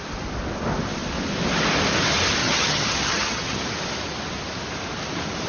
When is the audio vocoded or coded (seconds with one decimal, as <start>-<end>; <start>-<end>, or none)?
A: 2.4-3.6